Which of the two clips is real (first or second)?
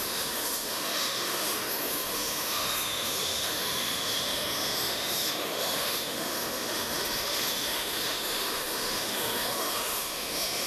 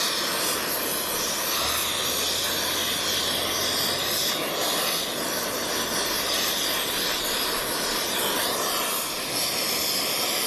second